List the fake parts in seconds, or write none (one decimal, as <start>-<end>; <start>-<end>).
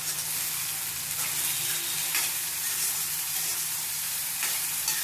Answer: 2.0-5.0